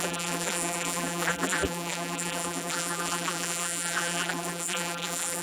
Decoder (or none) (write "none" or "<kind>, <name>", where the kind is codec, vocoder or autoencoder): vocoder, BigVGAN v2